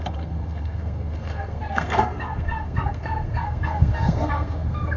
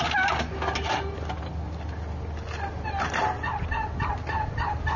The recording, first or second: second